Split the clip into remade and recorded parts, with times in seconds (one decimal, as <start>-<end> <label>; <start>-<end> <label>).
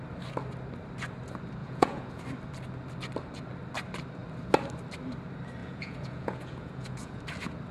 0.0-1.6 recorded; 1.6-2.2 remade; 2.2-5.6 recorded; 5.6-7.2 remade; 7.2-7.7 recorded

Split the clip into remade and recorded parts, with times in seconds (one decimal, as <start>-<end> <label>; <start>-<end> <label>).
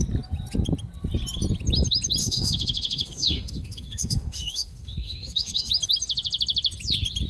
0.0-2.2 recorded; 2.2-5.7 remade; 5.7-7.3 recorded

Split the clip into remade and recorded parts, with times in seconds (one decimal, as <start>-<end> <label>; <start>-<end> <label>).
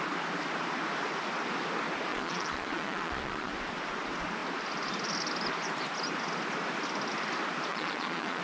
0.0-2.1 recorded; 2.1-3.5 remade; 3.5-7.7 recorded; 7.7-8.4 remade